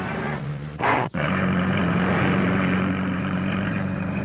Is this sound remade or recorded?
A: remade